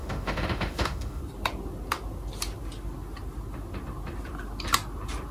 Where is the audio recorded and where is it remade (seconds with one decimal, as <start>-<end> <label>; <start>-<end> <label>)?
0.0-1.2 remade; 1.2-5.3 recorded